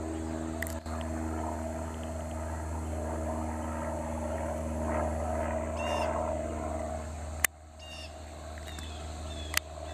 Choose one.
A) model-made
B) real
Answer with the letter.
B